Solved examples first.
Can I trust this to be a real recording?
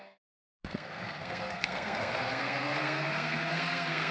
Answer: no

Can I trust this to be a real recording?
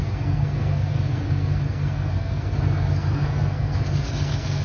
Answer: no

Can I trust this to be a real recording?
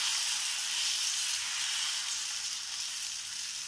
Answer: yes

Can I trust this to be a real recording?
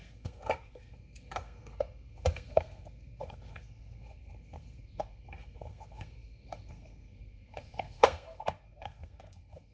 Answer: no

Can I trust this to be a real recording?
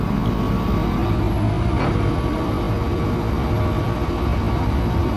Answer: yes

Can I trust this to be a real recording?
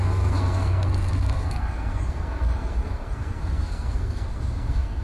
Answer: no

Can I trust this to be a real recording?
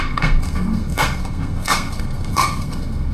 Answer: no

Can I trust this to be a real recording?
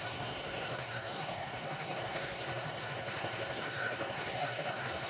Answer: no